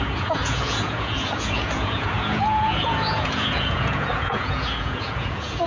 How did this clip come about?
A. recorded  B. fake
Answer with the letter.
B